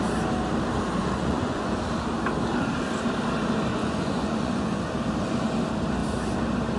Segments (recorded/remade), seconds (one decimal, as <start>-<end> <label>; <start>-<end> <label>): 0.0-1.0 recorded; 1.0-1.8 remade; 1.8-3.7 recorded; 3.7-4.8 remade; 4.8-6.8 recorded